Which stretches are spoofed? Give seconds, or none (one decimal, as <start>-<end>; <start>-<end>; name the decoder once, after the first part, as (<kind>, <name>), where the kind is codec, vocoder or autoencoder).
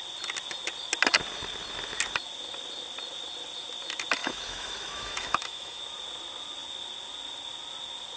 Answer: 4.2-5.8 (autoencoder, DAC-VAE)